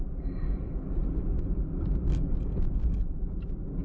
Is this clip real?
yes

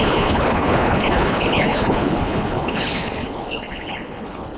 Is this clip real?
no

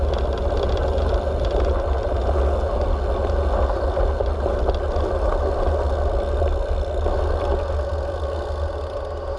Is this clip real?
yes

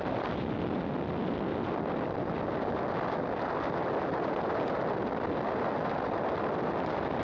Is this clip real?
yes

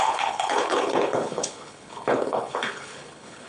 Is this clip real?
no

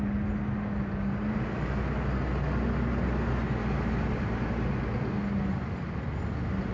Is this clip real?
yes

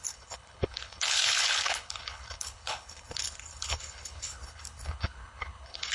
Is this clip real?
no